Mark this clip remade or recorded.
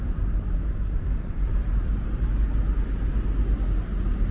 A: recorded